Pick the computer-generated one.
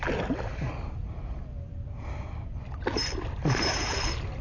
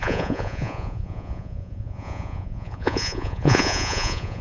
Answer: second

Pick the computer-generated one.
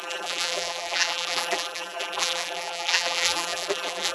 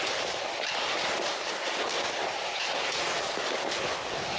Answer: first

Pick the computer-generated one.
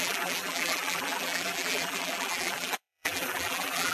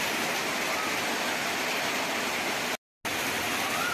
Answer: first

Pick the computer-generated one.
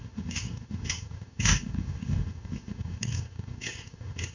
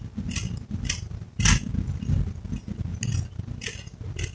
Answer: first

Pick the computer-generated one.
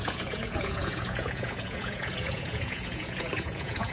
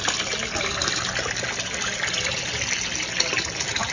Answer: first